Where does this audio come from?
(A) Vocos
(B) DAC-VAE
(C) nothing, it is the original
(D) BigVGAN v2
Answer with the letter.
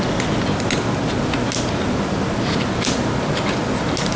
C